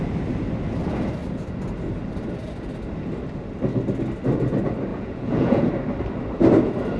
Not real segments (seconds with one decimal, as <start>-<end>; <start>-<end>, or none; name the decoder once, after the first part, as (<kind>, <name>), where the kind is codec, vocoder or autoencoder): 4.9-5.7 (vocoder, Vocos)